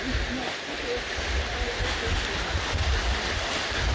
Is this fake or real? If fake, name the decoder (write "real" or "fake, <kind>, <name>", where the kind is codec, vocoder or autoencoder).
real